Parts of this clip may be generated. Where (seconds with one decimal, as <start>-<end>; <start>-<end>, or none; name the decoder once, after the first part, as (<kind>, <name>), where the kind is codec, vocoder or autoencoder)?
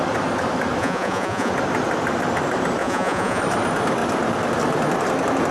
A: 0.8-1.5 (vocoder, Vocos); 2.8-3.4